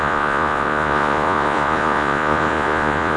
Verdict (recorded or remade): remade